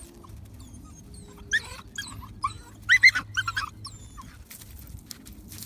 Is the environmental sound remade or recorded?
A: recorded